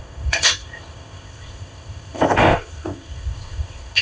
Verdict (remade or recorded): remade